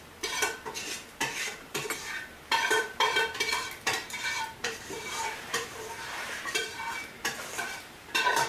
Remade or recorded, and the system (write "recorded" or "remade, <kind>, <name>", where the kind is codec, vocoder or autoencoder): remade, vocoder, BigVGAN v2